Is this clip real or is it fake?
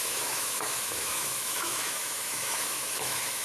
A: fake